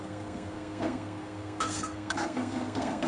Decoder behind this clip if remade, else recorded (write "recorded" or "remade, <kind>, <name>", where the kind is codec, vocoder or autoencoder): remade, codec, SNAC